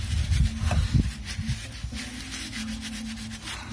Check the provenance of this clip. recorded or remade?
recorded